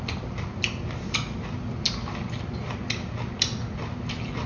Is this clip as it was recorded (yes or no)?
yes